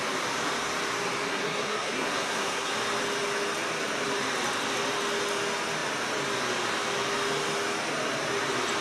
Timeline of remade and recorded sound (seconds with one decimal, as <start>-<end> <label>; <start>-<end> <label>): 0.0-1.3 recorded; 1.3-2.7 remade; 2.7-8.8 recorded